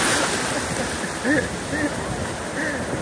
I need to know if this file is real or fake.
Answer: real